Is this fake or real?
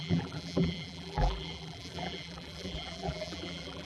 fake